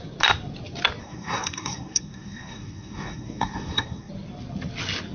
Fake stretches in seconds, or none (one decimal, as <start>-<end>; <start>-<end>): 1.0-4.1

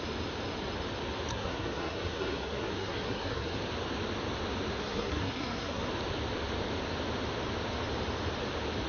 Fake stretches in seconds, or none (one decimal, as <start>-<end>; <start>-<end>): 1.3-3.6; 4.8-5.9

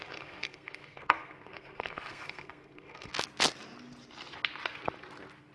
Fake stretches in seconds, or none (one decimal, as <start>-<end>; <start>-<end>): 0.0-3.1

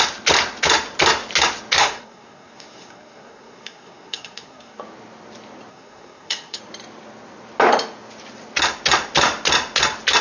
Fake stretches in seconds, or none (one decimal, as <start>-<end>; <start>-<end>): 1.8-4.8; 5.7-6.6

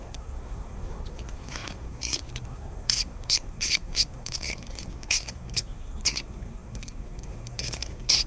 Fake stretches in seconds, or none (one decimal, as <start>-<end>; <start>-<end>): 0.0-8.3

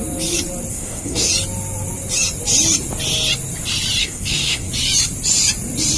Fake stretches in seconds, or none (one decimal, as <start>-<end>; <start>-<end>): 0.7-1.3; 4.0-4.7

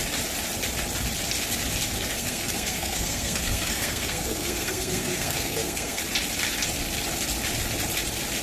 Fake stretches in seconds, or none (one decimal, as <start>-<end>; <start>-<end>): 2.1-6.0

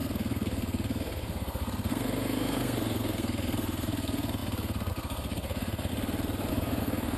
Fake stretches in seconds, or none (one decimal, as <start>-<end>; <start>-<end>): 0.0-5.9; 6.5-7.2